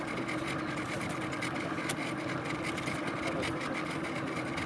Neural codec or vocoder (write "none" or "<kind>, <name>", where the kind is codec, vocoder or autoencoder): none